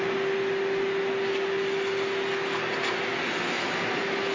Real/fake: real